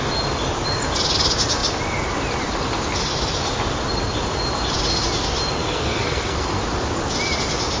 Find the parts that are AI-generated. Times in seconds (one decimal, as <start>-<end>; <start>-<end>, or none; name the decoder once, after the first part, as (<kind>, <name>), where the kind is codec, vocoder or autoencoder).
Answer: 5.6-6.6 (codec, SNAC)